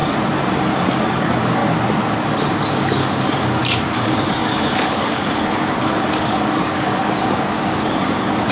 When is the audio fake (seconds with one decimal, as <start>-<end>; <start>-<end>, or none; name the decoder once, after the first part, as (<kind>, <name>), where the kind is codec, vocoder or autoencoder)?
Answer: 1.2-1.6 (codec, DAC); 2.7-8.5